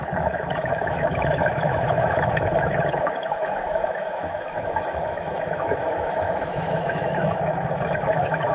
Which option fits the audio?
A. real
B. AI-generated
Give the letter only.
B